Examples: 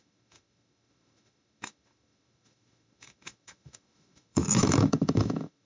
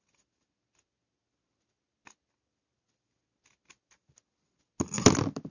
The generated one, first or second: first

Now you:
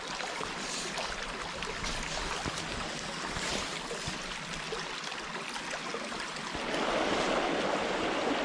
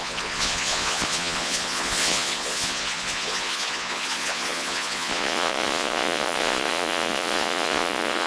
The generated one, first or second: second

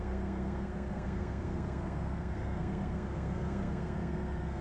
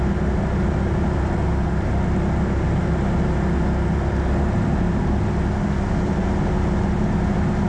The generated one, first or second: first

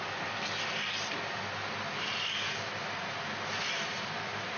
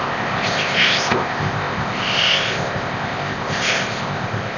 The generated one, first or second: second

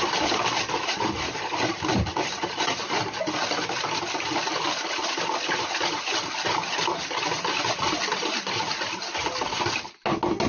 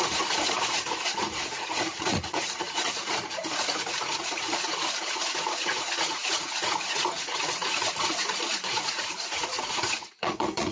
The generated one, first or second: second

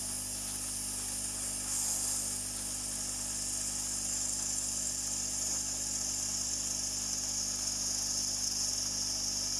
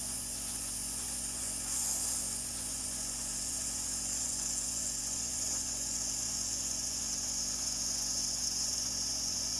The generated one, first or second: second